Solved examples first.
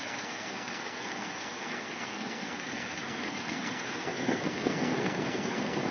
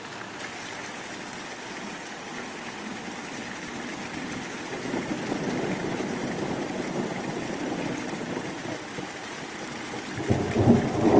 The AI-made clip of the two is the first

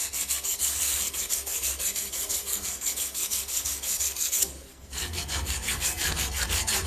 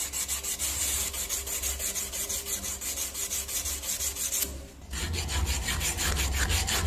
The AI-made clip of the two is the first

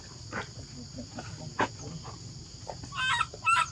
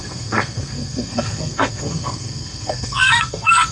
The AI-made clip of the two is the second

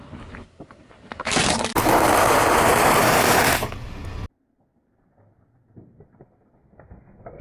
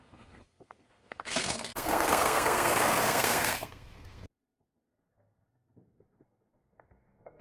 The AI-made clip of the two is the second